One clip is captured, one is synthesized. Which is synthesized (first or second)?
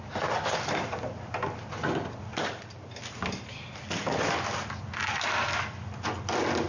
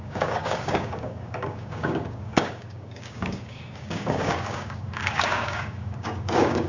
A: second